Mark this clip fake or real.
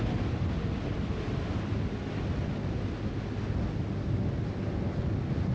real